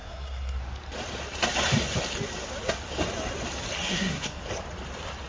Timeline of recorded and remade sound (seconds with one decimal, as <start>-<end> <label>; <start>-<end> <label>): 0.0-0.6 remade; 0.6-3.9 recorded; 3.9-4.4 remade; 4.4-5.3 recorded